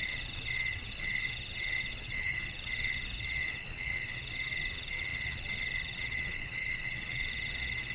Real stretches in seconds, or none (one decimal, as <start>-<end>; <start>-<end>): none